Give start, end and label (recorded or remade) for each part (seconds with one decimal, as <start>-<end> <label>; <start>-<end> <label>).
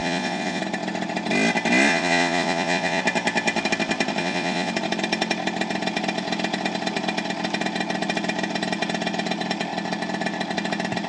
0.0-0.6 remade; 0.6-1.9 recorded; 1.9-3.0 remade; 3.0-4.2 recorded; 4.2-4.7 remade; 4.7-11.1 recorded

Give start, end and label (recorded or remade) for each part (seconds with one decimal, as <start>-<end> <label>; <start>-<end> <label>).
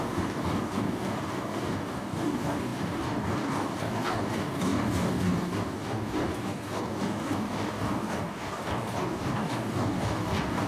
0.0-10.7 remade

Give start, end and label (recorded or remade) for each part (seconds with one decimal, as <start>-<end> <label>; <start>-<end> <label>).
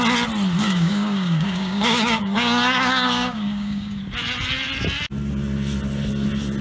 0.0-0.6 recorded; 0.6-4.0 remade; 4.0-6.6 recorded